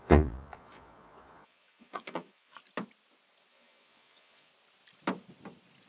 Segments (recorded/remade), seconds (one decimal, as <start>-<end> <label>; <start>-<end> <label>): 0.0-2.6 remade; 2.6-3.5 recorded; 3.5-4.5 remade; 4.5-5.9 recorded